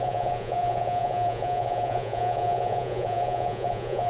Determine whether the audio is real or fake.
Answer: fake